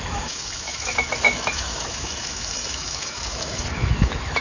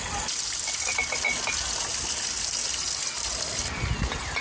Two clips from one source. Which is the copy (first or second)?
first